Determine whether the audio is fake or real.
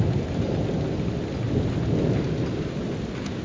real